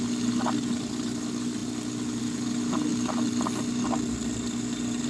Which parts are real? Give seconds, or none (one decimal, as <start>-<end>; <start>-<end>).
0.0-5.1